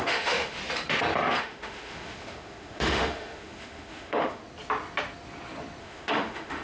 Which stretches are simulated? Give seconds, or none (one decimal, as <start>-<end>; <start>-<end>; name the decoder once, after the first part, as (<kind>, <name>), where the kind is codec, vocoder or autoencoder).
0.0-0.6 (autoencoder, DAC-VAE); 1.4-4.4; 5.8-6.6